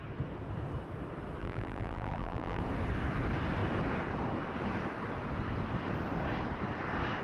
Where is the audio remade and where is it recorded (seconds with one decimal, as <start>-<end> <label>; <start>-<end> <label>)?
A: 0.0-1.4 recorded; 1.4-2.6 remade; 2.6-7.2 recorded